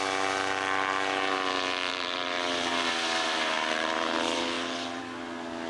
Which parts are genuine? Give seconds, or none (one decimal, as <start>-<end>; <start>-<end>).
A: 0.0-1.9; 5.0-5.7